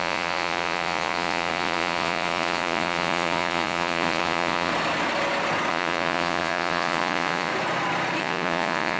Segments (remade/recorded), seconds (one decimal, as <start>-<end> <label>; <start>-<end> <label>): 0.0-4.7 remade; 4.7-5.7 recorded; 5.7-7.5 remade; 7.5-8.2 recorded; 8.2-9.0 remade